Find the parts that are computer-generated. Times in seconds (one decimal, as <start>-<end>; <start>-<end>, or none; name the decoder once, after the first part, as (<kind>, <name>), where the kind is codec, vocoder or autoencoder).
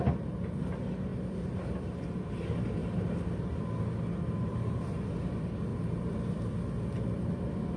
1.1-2.3 (vocoder, BigVGAN v2); 2.8-3.6; 4.5-5.1; 5.7-6.5